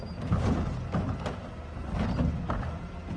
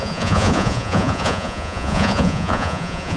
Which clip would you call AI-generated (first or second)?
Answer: second